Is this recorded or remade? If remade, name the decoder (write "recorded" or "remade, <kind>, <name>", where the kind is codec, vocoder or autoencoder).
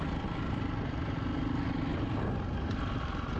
recorded